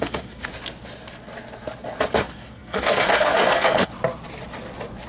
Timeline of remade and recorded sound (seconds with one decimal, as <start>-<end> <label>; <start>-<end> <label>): 0.0-0.5 remade; 0.5-2.2 recorded; 2.2-3.9 remade; 3.9-5.1 recorded